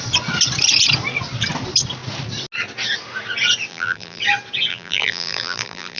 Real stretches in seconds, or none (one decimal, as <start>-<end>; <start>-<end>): 0.0-3.7; 4.2-4.7